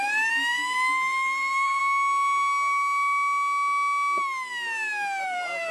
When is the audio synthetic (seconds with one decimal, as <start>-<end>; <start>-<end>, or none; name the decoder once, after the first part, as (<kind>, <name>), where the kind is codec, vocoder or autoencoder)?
0.0-1.8 (vocoder, BigVGAN v2); 5.2-5.7